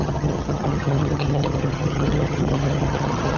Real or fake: fake